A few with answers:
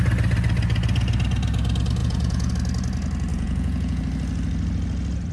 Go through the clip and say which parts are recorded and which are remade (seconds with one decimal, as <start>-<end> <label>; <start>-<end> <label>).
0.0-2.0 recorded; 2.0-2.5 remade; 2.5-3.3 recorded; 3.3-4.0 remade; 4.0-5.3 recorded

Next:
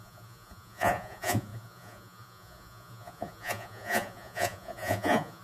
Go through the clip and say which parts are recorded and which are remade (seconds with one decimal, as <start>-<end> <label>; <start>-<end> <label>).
0.0-5.4 remade

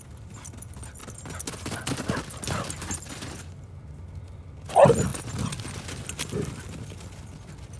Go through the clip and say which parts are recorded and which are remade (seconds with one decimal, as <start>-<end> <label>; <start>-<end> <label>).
0.0-7.8 recorded